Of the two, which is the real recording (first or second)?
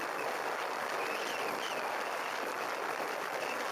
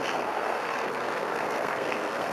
first